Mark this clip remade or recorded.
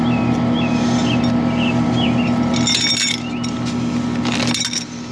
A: recorded